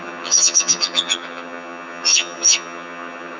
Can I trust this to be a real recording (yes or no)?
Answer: no